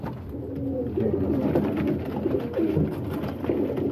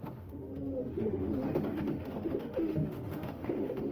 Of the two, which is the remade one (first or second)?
second